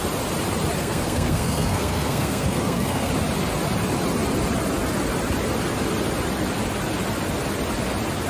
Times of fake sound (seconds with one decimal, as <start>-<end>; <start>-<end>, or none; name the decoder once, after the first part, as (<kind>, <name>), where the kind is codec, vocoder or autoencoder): 0.8-3.1 (codec, SNAC)